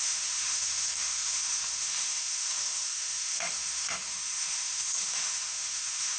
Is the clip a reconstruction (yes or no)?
yes